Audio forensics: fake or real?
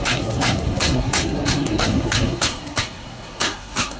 fake